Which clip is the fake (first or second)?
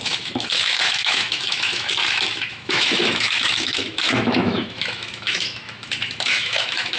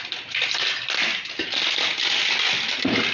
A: first